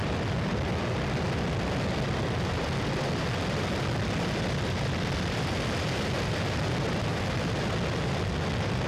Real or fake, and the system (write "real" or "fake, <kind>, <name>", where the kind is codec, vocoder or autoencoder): real